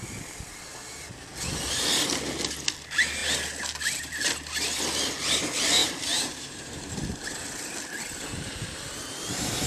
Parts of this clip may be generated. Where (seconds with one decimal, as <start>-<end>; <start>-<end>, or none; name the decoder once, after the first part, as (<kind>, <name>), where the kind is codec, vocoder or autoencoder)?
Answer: 5.8-7.2 (vocoder, BigVGAN v2); 8.3-8.9